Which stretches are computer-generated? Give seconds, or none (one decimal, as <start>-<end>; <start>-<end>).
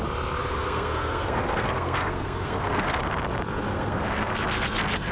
0.4-3.0; 3.7-4.3